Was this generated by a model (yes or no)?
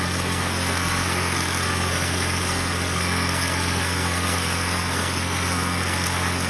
yes